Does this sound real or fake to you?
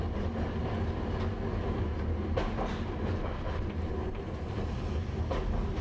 real